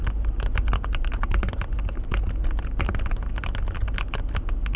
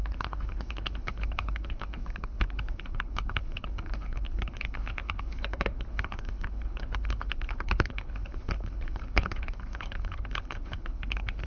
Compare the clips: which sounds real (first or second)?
first